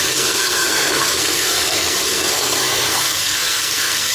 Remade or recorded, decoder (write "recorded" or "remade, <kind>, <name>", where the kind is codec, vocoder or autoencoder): remade, codec, SNAC